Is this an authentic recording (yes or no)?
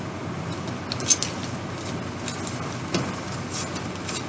yes